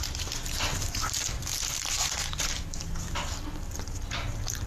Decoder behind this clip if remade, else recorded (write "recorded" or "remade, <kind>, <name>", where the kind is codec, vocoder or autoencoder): recorded